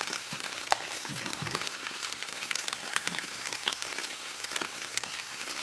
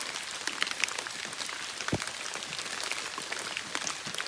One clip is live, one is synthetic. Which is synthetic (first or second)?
first